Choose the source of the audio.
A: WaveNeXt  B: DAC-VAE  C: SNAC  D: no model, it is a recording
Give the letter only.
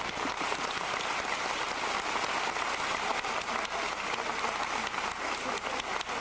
D